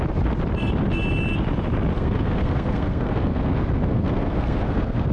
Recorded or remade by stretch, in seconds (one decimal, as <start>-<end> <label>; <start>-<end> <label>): 0.0-1.9 recorded; 1.9-5.1 remade